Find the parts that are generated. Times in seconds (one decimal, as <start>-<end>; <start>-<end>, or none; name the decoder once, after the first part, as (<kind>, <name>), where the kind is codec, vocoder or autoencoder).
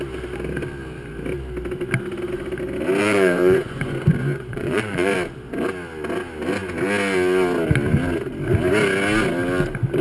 3.0-5.1 (vocoder, Vocos)